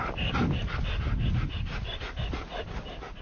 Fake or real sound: real